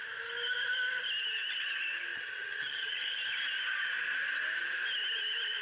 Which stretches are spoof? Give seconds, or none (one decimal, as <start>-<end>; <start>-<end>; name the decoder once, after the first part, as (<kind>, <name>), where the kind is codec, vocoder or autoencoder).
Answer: 2.1-3.0 (vocoder, HiFi-GAN)